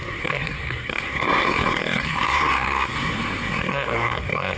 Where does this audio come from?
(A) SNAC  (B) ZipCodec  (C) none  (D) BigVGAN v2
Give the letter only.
A